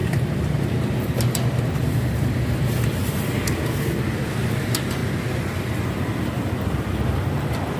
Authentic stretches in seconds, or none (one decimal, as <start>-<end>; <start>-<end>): 1.7-5.0; 5.8-7.8